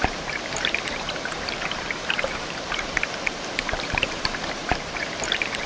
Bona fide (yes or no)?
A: no